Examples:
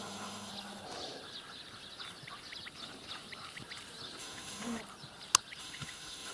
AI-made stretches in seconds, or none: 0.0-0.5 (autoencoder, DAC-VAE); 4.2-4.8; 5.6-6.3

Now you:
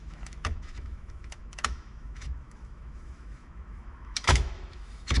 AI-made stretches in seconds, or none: 0.0-5.2 (autoencoder, DAC-VAE)

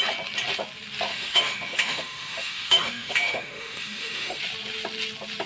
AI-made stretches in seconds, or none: 1.1-4.4 (autoencoder, DAC-VAE)

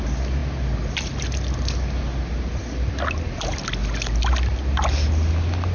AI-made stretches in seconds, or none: none